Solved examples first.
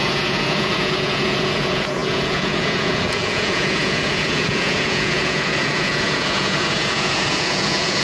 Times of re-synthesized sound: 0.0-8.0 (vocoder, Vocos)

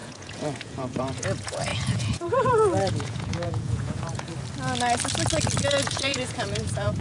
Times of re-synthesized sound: 0.0-4.3 (vocoder, Vocos); 5.7-7.0

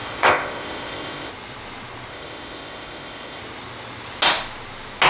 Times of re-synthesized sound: 0.0-1.3 (codec, ZipCodec); 2.1-3.4

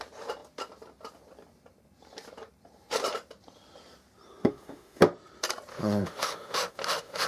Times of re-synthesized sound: 4.4-5.0 (autoencoder, DAC-VAE); 5.7-7.3

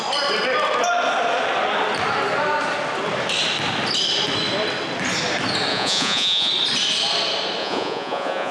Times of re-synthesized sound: 5.7-6.5 (vocoder, Vocos); 7.6-8.5

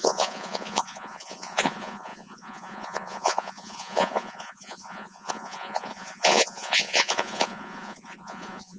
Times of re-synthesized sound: 0.0-8.8 (vocoder, Vocos)